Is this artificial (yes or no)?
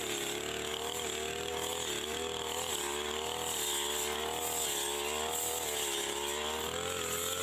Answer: no